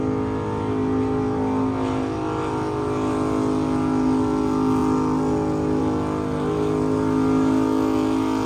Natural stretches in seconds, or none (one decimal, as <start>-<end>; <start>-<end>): 0.0-8.5